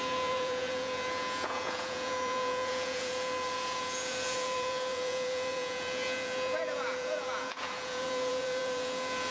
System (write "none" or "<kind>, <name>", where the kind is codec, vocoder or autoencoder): vocoder, Vocos